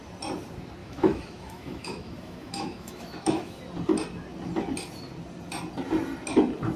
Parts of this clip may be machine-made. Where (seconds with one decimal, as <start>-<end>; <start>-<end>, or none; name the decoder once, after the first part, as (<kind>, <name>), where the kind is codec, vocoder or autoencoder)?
0.8-3.6 (autoencoder, DAC-VAE)